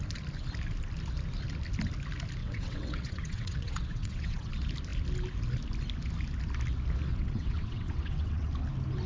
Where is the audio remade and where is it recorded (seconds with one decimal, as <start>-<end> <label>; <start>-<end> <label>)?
0.0-2.4 recorded; 2.4-4.5 remade; 4.5-7.1 recorded; 7.1-8.5 remade; 8.5-9.1 recorded